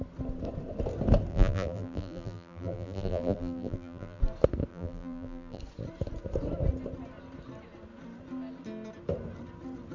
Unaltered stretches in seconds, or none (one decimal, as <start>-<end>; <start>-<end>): 0.0-1.3; 4.2-4.7; 5.6-9.9